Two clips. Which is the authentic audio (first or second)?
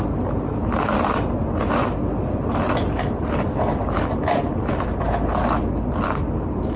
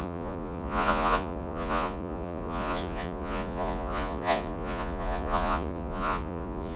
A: first